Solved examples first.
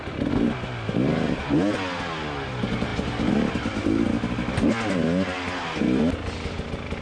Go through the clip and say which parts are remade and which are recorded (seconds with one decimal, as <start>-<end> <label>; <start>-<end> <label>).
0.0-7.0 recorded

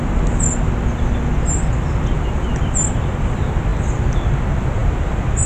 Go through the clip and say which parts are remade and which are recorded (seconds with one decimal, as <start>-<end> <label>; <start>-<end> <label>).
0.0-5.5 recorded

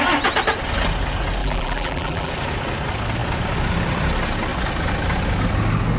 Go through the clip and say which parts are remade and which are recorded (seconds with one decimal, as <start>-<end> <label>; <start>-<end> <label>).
0.0-1.4 recorded; 1.4-2.3 remade; 2.3-6.0 recorded

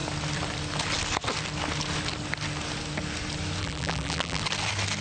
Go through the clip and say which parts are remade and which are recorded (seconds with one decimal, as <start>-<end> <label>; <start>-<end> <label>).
0.0-3.6 recorded; 3.6-4.4 remade; 4.4-5.0 recorded

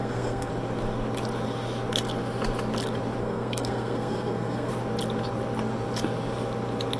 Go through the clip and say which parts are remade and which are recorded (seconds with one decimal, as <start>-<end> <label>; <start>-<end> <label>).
0.0-0.5 remade; 0.5-3.2 recorded; 3.2-4.7 remade; 4.7-7.0 recorded

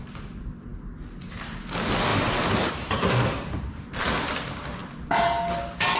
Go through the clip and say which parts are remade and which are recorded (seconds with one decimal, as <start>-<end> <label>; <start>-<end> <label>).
0.0-2.1 recorded; 2.1-3.9 remade; 3.9-6.0 recorded

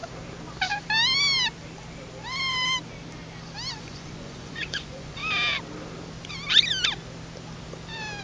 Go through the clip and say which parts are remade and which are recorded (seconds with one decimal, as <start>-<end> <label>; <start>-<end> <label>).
0.0-3.7 recorded; 3.7-5.2 remade; 5.2-8.2 recorded

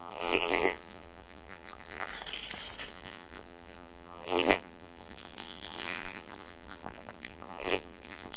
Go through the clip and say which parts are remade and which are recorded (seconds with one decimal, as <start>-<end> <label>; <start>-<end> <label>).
0.0-2.1 remade; 2.1-2.9 recorded; 2.9-8.4 remade